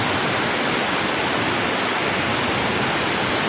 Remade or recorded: recorded